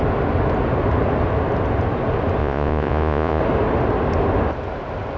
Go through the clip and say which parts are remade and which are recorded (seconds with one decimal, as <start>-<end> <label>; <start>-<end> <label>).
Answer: 0.0-2.4 recorded; 2.4-3.4 remade; 3.4-5.2 recorded